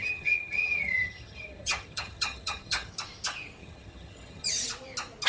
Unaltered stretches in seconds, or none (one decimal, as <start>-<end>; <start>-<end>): 2.9-3.6; 4.5-5.3